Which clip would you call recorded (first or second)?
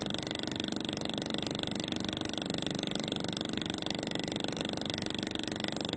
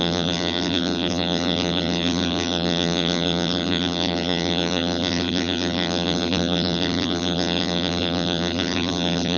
first